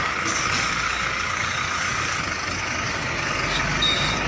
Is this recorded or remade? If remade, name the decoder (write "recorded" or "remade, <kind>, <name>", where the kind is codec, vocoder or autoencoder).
remade, codec, DAC